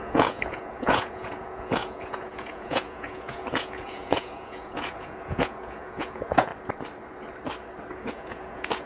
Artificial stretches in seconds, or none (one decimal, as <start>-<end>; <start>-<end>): 0.0-6.5; 8.1-8.9